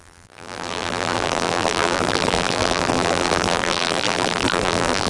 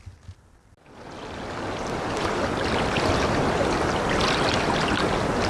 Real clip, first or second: second